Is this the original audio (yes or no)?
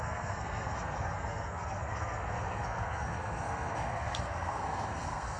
no